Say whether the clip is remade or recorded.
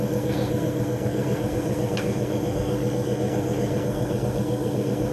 remade